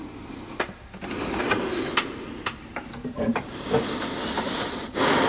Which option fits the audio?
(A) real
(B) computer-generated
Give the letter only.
A